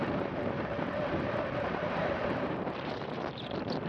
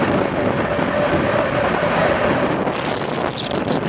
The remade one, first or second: first